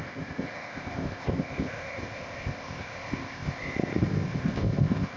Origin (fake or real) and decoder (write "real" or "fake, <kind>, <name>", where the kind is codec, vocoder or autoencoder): fake, codec, ZipCodec